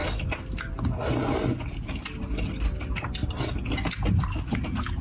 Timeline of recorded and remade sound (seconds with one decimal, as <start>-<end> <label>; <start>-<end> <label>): 0.0-5.0 recorded